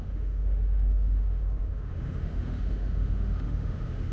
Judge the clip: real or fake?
fake